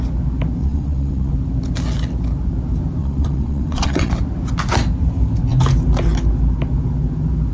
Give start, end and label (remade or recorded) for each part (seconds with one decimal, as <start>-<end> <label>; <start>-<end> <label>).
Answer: 0.0-0.6 recorded; 0.6-1.3 remade; 1.3-3.0 recorded; 3.0-4.1 remade; 4.1-7.5 recorded